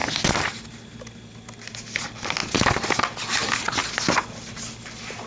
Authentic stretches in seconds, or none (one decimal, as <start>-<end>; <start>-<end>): 0.0-5.3